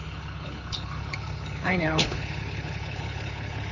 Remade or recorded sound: remade